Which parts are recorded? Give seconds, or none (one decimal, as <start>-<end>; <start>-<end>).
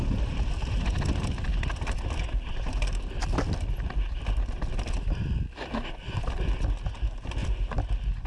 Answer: 0.0-8.3